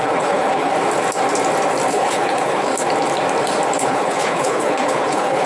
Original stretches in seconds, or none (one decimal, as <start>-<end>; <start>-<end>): 0.7-1.9; 2.7-3.8